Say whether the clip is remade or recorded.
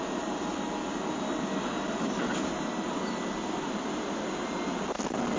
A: recorded